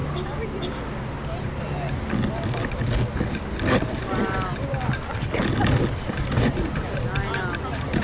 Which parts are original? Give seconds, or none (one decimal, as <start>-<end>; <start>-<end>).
0.0-8.0